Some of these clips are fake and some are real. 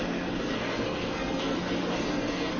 fake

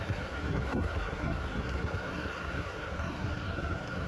fake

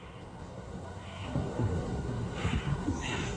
fake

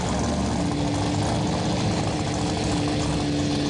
real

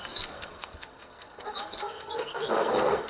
fake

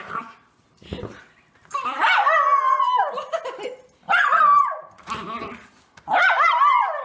real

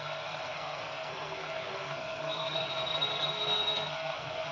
fake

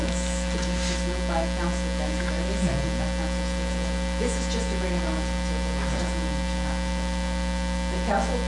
real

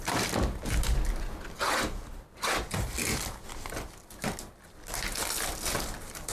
real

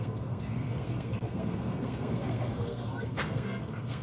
fake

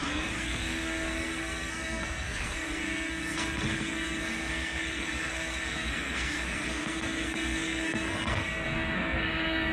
fake